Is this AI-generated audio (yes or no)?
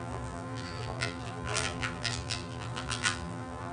yes